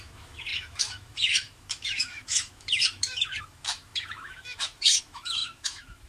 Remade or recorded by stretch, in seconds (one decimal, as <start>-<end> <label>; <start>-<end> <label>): 0.0-6.1 remade